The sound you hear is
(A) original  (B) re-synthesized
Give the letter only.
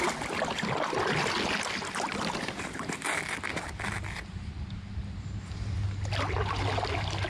A